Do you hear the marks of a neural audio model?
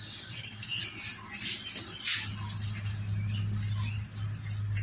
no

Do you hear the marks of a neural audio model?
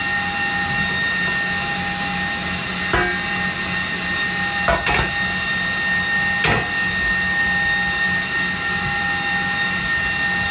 no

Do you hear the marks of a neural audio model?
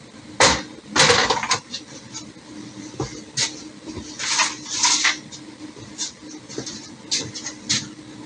no